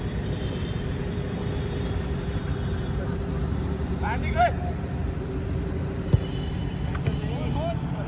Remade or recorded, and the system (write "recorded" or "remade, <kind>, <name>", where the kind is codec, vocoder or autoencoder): recorded